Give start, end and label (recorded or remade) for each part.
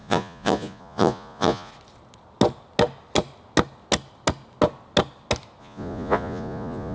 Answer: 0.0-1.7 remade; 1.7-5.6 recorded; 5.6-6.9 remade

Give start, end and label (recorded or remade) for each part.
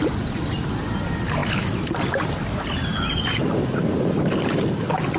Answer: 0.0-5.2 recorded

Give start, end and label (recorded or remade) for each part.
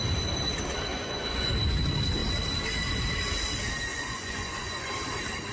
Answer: 0.0-0.9 recorded; 0.9-1.5 remade; 1.5-3.9 recorded; 3.9-4.9 remade; 4.9-5.5 recorded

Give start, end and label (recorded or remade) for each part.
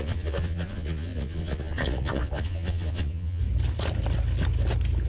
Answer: 0.0-3.4 remade; 3.4-5.1 recorded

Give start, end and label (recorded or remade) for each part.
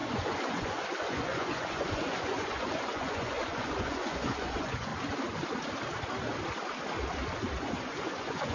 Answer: 0.0-4.9 remade; 4.9-7.6 recorded; 7.6-8.5 remade